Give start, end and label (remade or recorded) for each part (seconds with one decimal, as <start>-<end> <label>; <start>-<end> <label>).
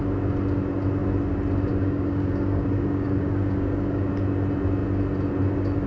0.0-1.7 recorded; 1.7-4.1 remade; 4.1-5.9 recorded